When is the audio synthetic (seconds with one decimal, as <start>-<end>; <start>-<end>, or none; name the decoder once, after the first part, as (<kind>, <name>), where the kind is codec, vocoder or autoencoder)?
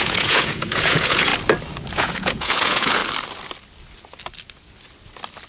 0.0-1.3 (vocoder, Vocos); 1.9-3.0